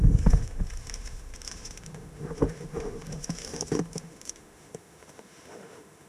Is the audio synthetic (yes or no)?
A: yes